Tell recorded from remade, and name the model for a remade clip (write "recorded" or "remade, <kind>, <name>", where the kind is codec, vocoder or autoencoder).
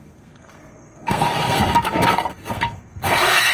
remade, codec, SNAC